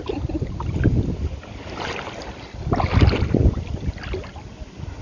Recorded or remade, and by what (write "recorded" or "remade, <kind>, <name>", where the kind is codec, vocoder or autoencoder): recorded